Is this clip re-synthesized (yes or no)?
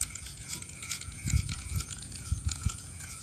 yes